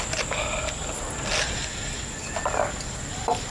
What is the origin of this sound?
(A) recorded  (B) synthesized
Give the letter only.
A